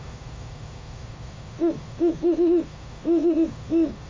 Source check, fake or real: fake